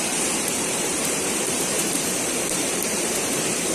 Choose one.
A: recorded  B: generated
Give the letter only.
B